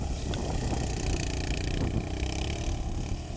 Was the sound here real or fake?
real